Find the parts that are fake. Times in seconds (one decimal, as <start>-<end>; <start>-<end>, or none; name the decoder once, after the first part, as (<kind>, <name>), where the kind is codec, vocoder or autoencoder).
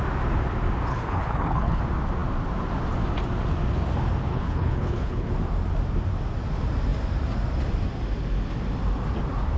0.9-1.8 (codec, HILCodec); 4.3-5.3